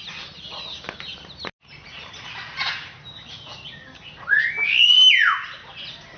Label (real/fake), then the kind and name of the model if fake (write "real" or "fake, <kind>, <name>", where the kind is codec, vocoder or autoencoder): real